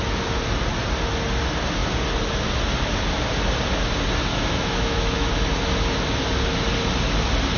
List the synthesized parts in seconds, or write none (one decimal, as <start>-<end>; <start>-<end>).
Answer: 4.3-5.3